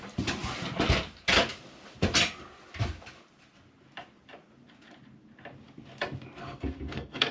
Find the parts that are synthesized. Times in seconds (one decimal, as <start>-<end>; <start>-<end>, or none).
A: 6.4-7.3